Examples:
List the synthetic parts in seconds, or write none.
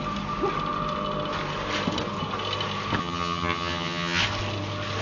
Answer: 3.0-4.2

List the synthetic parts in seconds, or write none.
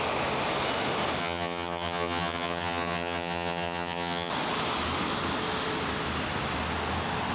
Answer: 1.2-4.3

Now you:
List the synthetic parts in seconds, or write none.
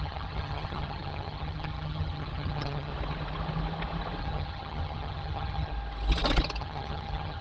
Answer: 0.0-2.9; 4.2-5.7; 6.6-7.4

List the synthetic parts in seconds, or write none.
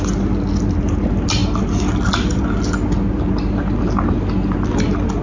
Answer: none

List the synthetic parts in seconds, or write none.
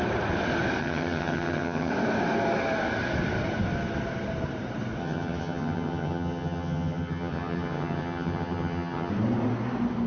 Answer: 0.8-1.9; 5.0-9.1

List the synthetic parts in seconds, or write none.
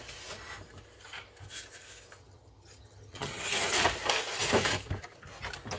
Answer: 2.2-3.4